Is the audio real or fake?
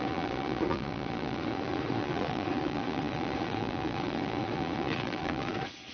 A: fake